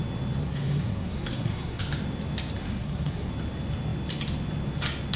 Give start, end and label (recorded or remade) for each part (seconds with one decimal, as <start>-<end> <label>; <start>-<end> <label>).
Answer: 0.0-0.4 recorded; 0.4-1.8 remade; 1.8-2.6 recorded; 2.6-3.3 remade; 3.3-5.2 recorded